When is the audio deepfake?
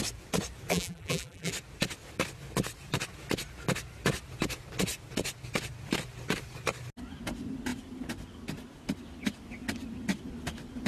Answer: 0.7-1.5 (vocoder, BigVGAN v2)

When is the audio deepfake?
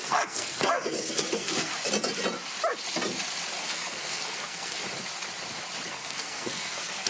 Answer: 0.0-1.7 (codec, SNAC); 3.6-4.8; 5.9-7.1